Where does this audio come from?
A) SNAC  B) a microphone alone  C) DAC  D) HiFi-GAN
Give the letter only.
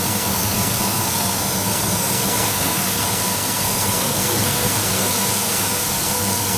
A